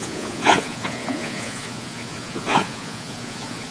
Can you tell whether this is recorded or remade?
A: remade